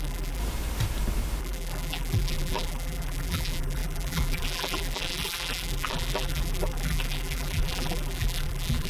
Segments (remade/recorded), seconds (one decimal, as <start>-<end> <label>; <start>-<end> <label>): 0.0-0.4 remade; 0.4-1.4 recorded; 1.4-8.9 remade